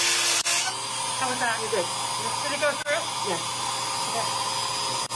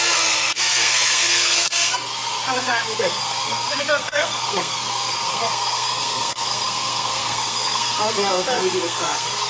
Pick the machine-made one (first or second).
second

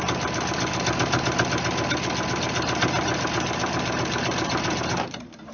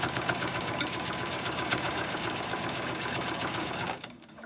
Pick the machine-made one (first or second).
second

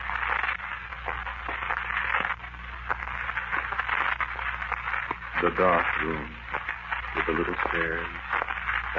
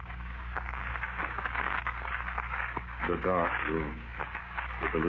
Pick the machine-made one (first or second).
second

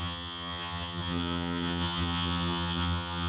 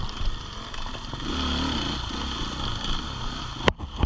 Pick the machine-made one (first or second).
first